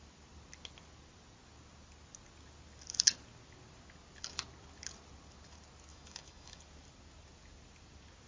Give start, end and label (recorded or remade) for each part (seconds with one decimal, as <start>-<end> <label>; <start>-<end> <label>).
0.0-5.9 recorded; 5.9-6.6 remade; 6.6-8.3 recorded